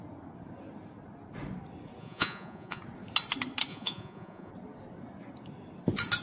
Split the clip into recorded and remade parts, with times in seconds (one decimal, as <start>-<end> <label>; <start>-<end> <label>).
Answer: 0.0-2.0 recorded; 2.0-2.8 remade; 2.8-3.7 recorded; 3.7-4.5 remade; 4.5-6.2 recorded